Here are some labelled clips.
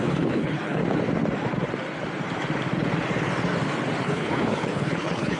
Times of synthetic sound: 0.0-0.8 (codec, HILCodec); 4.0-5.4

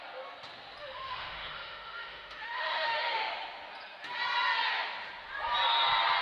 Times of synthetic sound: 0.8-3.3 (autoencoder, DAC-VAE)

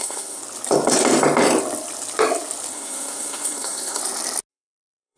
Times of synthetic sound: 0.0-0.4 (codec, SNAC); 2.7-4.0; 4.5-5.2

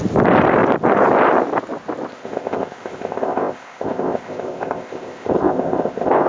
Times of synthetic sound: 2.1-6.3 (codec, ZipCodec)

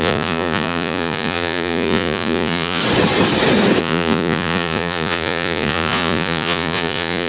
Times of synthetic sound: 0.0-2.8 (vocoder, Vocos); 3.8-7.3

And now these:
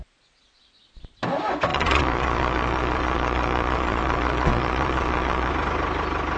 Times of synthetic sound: 1.7-5.5 (vocoder, Vocos)

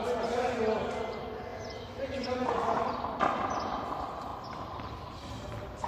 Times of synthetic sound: 1.5-2.8 (vocoder, BigVGAN v2); 4.3-5.0